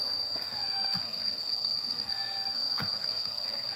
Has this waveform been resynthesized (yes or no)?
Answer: yes